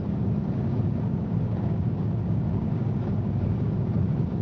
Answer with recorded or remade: remade